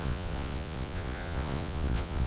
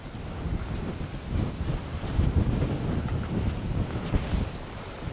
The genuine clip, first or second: second